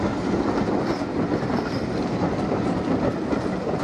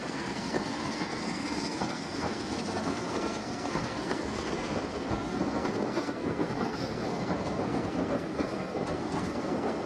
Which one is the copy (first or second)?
second